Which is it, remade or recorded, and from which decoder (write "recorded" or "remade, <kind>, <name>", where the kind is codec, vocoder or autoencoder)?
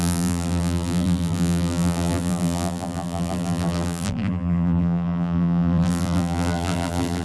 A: remade, vocoder, BigVGAN v2